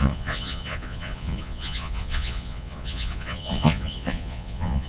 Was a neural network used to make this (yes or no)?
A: yes